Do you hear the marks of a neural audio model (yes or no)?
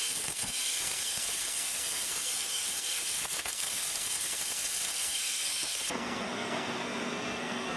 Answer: yes